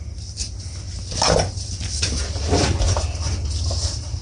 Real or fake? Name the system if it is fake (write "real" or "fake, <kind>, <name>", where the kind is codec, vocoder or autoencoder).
real